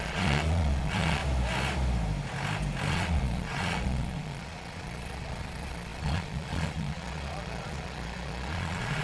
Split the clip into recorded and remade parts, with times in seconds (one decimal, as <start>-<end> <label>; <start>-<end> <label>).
0.0-1.2 remade; 1.2-2.9 recorded; 2.9-9.0 remade